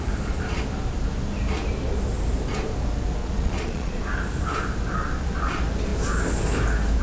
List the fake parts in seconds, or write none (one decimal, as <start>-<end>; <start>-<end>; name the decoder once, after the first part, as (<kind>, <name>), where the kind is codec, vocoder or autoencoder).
3.2-4.0 (vocoder, Vocos)